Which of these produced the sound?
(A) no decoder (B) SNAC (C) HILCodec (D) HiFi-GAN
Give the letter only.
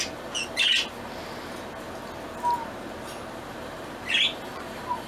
A